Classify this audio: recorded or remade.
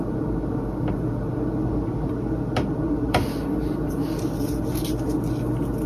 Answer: recorded